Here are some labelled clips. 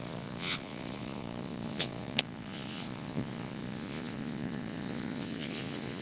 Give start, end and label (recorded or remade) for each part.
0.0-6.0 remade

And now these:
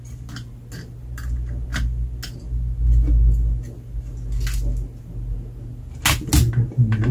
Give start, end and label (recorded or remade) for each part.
0.0-7.1 recorded

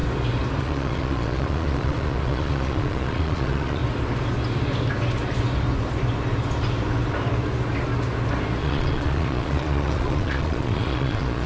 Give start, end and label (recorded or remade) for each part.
0.0-0.6 recorded; 0.6-3.8 remade; 3.8-8.6 recorded; 8.6-11.5 remade